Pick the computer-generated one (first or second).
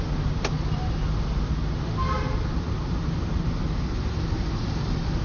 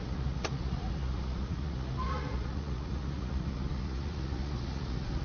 second